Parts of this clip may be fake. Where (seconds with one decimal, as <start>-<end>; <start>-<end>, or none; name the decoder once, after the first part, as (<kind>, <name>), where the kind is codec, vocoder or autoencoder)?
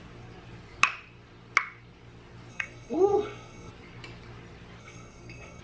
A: 2.5-3.7 (codec, SNAC); 4.8-5.6